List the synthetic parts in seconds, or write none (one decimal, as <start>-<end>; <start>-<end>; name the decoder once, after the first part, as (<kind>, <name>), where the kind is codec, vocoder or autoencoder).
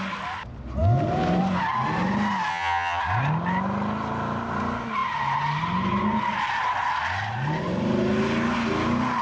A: 2.5-3.0 (vocoder, HiFi-GAN)